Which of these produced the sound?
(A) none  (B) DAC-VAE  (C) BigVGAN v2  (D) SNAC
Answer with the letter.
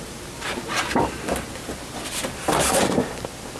A